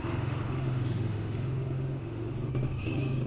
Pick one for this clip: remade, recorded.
remade